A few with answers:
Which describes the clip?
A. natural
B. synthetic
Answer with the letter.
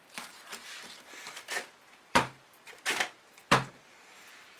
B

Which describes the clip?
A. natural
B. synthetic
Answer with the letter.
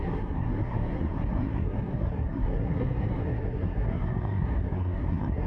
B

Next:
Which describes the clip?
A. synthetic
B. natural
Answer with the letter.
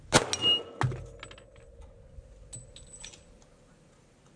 B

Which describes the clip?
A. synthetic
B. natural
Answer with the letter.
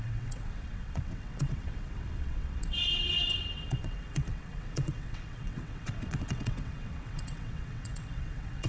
A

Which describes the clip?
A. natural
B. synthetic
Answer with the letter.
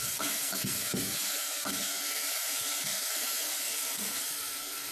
B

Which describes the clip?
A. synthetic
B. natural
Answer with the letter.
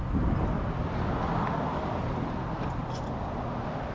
B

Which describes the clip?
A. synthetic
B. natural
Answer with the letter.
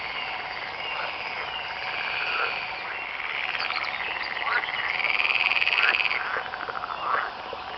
B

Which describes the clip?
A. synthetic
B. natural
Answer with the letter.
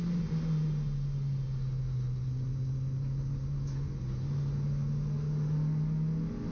B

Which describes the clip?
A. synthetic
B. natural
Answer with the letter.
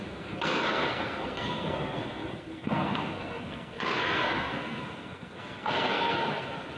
A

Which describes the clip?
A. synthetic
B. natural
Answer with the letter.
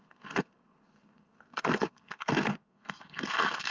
A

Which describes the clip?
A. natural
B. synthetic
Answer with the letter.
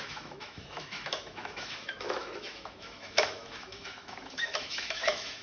B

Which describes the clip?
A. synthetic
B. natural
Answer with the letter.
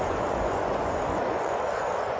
A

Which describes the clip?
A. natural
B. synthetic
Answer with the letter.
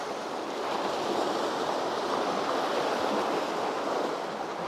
A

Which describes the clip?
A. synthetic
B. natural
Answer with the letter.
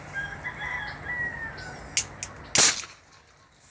B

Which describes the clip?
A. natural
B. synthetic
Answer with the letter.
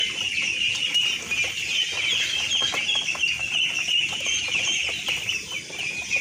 A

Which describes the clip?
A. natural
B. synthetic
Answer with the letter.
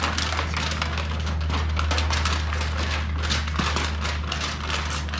A